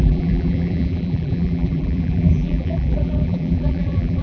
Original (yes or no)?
no